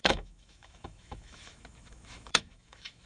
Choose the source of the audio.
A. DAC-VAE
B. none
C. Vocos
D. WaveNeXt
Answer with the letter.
A